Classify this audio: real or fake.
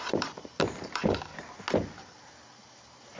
real